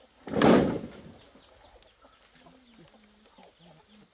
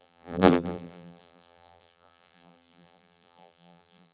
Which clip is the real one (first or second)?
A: first